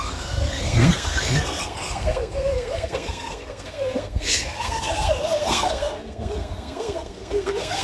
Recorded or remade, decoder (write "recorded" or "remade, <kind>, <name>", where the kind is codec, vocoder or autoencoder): remade, codec, SNAC